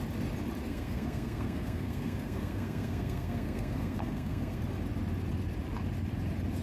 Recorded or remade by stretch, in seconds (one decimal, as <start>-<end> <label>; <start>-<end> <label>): 0.0-0.6 recorded; 0.6-4.6 remade; 4.6-6.6 recorded